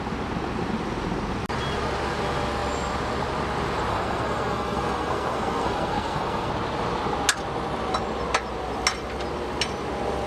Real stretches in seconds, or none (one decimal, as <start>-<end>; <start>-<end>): 0.0-3.9; 6.5-10.3